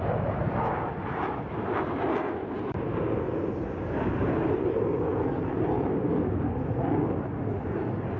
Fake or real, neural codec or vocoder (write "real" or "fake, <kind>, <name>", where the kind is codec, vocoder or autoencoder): real